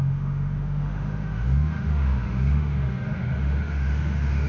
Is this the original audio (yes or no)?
no